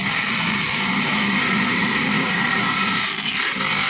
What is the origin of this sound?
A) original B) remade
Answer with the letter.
B